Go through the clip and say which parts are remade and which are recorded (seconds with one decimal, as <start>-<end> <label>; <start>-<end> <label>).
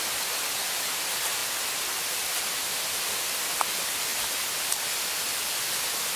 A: 0.0-6.2 recorded